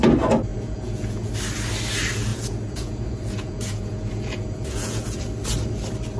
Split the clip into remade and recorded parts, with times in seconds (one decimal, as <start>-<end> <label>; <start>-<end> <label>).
0.0-0.5 recorded; 0.5-1.3 remade; 1.3-2.3 recorded; 2.3-5.2 remade; 5.2-6.2 recorded